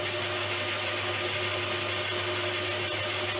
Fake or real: real